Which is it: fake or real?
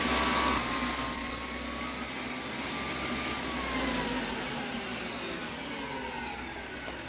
real